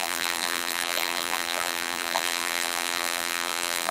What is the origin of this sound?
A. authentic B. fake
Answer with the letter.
B